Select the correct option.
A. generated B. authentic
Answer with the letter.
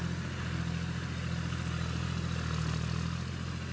B